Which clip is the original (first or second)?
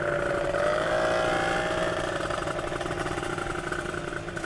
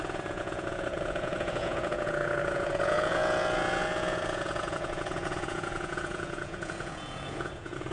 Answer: first